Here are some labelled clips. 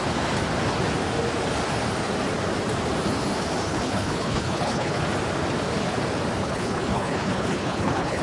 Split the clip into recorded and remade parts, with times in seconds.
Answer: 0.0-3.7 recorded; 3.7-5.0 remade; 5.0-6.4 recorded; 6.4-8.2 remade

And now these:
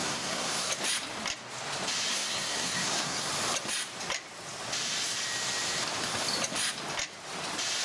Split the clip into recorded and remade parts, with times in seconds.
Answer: 0.0-0.7 remade; 0.7-2.1 recorded; 2.1-3.3 remade; 3.3-7.8 recorded

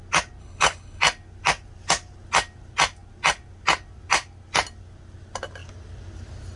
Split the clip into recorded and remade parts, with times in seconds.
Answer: 0.0-0.4 recorded; 0.4-1.0 remade; 1.0-6.6 recorded

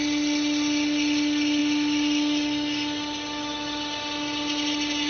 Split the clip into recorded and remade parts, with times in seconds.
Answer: 0.0-5.1 recorded